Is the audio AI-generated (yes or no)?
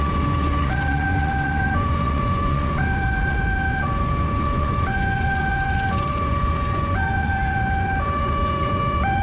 yes